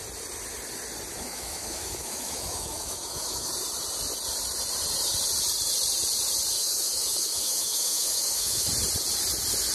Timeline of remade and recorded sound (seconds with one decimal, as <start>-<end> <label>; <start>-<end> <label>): 0.0-1.1 recorded; 1.1-3.5 remade; 3.5-6.6 recorded; 6.6-8.7 remade; 8.7-9.7 recorded